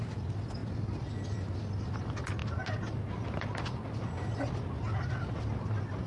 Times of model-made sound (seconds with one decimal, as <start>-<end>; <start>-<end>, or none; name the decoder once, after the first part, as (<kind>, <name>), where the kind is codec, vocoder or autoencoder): none